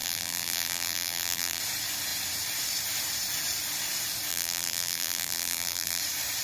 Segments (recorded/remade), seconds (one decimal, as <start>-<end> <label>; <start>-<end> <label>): 0.0-1.6 remade; 1.6-4.3 recorded; 4.3-6.0 remade; 6.0-6.4 recorded